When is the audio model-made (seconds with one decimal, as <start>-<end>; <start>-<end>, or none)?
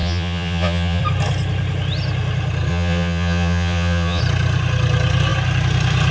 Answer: 0.0-1.0; 2.7-4.2